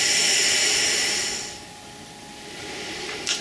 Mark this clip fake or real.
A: real